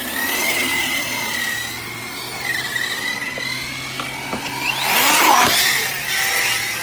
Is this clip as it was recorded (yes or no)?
yes